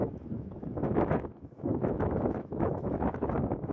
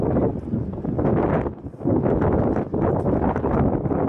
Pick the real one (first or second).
second